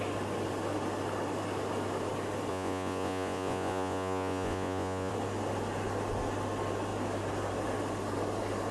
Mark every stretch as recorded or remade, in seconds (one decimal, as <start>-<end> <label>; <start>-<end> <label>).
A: 0.0-2.5 recorded; 2.5-5.1 remade; 5.1-8.7 recorded